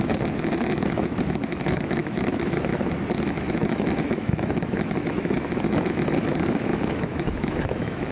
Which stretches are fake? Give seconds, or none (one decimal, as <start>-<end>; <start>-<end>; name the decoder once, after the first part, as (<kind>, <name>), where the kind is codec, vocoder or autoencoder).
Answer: 0.0-2.7 (autoencoder, DAC-VAE); 3.4-8.1